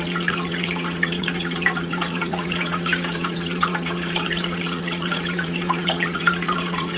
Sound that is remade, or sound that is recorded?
remade